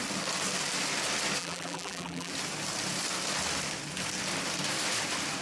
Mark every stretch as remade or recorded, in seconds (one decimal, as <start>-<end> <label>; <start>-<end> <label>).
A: 0.0-1.4 recorded; 1.4-2.3 remade; 2.3-5.4 recorded